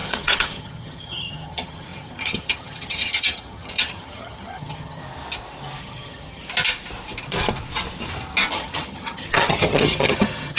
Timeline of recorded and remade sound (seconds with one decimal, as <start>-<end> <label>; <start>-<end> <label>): 0.0-5.0 remade; 5.0-5.8 recorded; 5.8-6.4 remade; 6.4-8.5 recorded; 8.5-10.6 remade